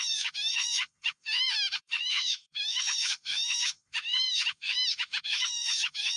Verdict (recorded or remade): remade